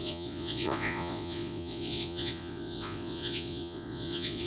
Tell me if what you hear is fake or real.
fake